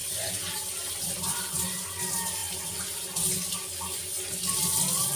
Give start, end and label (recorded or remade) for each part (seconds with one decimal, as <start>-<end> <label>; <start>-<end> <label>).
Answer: 0.0-5.2 recorded